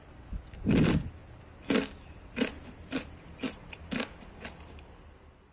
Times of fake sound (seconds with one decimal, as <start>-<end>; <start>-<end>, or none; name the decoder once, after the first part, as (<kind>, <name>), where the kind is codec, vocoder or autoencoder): 1.2-4.3 (vocoder, BigVGAN v2)